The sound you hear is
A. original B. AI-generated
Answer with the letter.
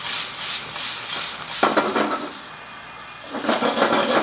A